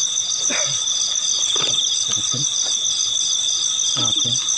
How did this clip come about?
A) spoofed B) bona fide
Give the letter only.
B